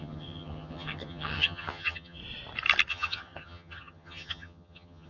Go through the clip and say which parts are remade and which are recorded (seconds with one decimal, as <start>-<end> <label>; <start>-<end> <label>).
0.0-2.2 remade; 2.2-2.9 recorded; 2.9-5.1 remade